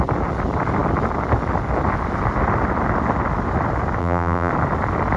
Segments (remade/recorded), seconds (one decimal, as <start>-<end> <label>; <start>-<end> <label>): 0.0-4.0 recorded; 4.0-4.5 remade; 4.5-5.2 recorded